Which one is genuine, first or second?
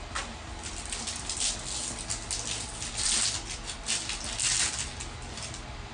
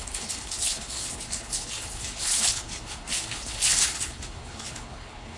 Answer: first